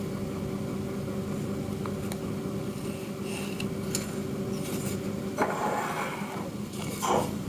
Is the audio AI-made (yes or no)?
no